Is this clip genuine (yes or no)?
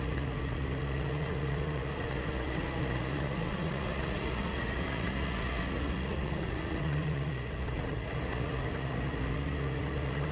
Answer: no